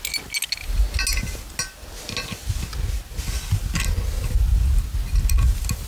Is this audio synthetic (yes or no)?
no